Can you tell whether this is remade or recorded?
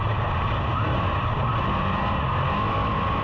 recorded